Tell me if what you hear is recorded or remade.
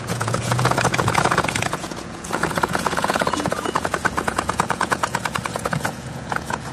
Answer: remade